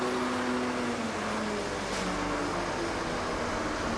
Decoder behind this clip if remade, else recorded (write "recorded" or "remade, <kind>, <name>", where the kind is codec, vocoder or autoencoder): recorded